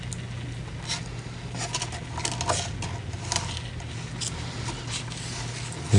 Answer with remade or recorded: recorded